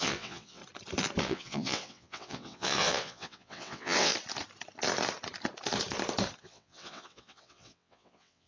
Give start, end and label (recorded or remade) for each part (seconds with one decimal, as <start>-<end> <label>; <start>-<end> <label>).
0.0-0.6 remade; 0.6-1.2 recorded; 1.2-4.1 remade; 4.1-6.4 recorded; 6.4-8.5 remade